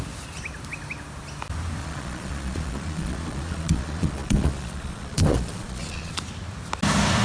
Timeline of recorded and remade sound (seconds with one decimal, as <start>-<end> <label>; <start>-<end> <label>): 0.0-1.8 recorded; 1.8-6.1 remade; 6.1-7.2 recorded